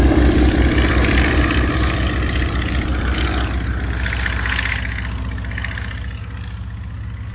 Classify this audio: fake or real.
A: real